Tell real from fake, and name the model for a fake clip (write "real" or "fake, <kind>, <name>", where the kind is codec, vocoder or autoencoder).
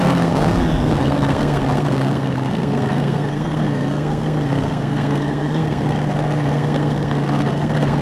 fake, codec, SNAC